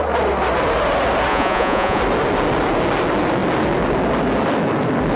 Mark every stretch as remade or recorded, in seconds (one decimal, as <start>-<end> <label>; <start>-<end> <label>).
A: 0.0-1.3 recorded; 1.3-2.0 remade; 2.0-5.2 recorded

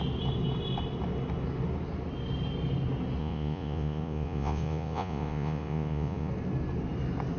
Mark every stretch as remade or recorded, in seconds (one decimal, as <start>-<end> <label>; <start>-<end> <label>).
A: 0.0-3.2 recorded; 3.2-6.3 remade; 6.3-7.4 recorded

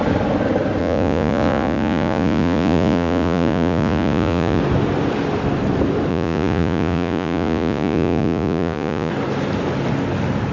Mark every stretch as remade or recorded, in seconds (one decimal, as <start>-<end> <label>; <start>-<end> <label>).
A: 0.0-0.8 recorded; 0.8-4.6 remade; 4.6-6.1 recorded; 6.1-9.1 remade; 9.1-10.5 recorded